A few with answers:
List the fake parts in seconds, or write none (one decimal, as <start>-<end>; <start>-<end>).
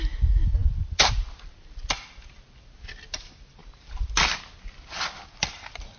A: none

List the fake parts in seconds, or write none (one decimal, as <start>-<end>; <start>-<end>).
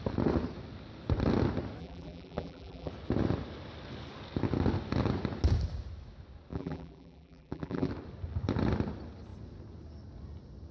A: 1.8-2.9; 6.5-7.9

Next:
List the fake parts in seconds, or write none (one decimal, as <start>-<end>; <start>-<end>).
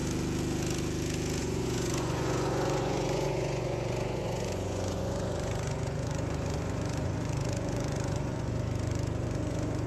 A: 1.4-9.9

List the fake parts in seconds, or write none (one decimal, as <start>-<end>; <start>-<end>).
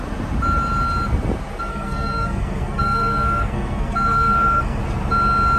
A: 1.7-4.8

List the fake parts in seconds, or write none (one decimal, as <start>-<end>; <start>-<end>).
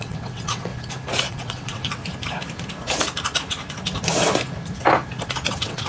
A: 0.0-0.7; 1.3-2.0; 5.5-5.9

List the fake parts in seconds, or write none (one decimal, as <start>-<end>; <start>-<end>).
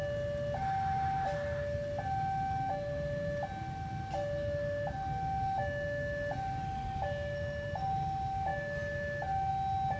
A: none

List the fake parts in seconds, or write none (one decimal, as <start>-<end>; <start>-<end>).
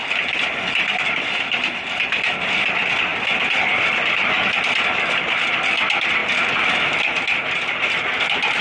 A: none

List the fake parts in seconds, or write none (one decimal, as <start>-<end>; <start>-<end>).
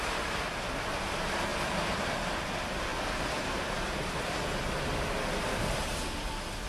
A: none